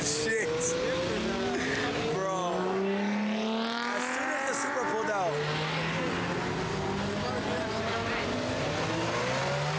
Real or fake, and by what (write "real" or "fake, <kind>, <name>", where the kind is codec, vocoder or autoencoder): real